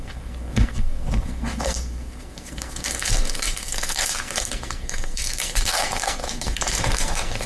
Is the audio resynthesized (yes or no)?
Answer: yes